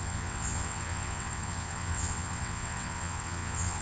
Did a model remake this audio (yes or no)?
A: yes